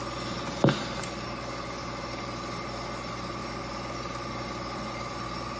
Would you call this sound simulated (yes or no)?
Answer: no